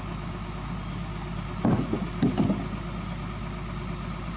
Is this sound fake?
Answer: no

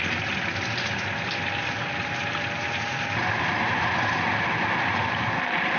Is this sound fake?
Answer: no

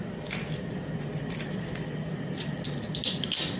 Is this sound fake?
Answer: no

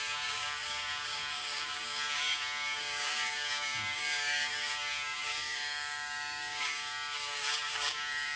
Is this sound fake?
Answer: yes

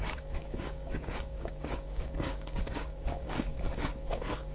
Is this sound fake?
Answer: yes